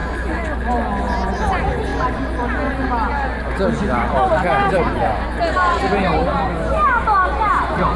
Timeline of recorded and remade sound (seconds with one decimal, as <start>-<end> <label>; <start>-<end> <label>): 0.0-1.3 recorded; 1.3-1.9 remade; 1.9-4.1 recorded; 4.1-8.0 remade